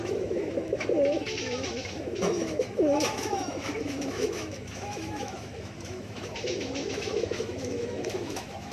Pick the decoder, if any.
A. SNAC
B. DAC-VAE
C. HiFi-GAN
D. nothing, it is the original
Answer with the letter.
B